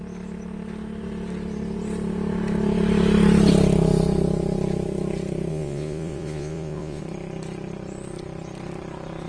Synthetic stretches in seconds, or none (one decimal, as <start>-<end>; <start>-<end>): 5.5-7.0